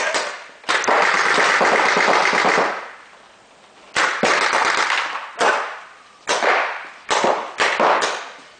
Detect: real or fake real